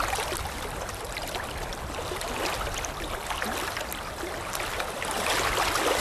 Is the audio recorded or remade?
recorded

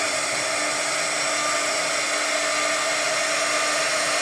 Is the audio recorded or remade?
recorded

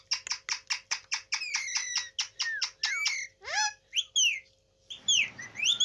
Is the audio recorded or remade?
recorded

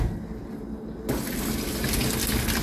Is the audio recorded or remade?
recorded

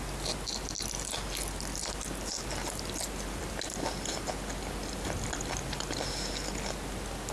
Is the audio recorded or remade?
recorded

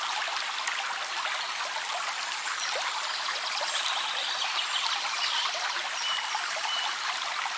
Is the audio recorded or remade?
recorded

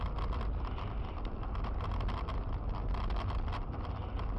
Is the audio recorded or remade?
recorded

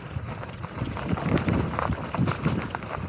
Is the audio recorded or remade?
recorded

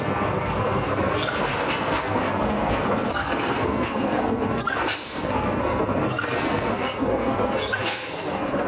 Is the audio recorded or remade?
remade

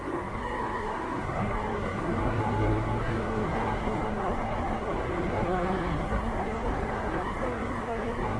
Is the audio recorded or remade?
remade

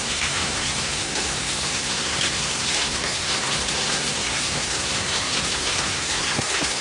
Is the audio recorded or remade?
remade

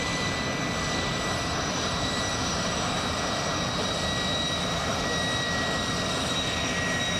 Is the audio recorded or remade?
recorded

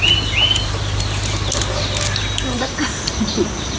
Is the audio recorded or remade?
recorded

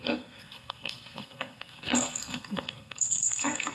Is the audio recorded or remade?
remade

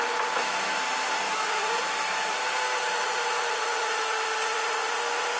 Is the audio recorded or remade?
recorded